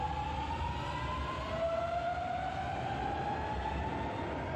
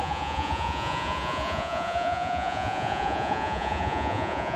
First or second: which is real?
first